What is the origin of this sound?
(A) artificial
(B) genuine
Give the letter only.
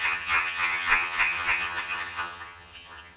A